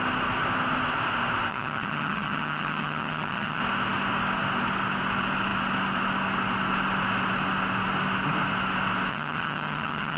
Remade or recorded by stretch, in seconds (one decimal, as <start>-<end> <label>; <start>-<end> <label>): 0.0-1.5 recorded; 1.5-3.6 remade; 3.6-9.1 recorded; 9.1-10.2 remade